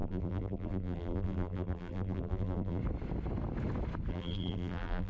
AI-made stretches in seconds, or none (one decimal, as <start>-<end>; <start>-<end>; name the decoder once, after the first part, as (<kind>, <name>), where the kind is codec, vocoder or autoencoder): 0.0-2.8 (vocoder, BigVGAN v2); 4.1-5.1